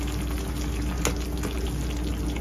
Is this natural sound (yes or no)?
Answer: yes